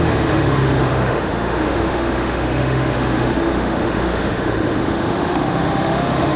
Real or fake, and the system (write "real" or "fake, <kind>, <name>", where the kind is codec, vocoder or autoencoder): fake, autoencoder, DAC-VAE